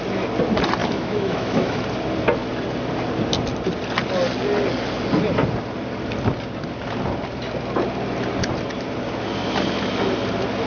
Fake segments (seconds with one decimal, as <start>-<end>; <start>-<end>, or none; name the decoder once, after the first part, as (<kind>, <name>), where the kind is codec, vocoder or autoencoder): 0.8-1.8 (autoencoder, DAC-VAE)